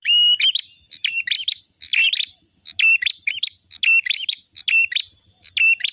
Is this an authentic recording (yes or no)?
yes